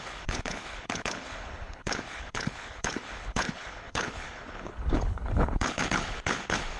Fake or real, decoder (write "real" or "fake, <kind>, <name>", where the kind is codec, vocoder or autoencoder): fake, codec, HILCodec